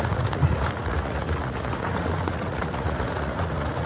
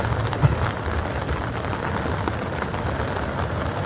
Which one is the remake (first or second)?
first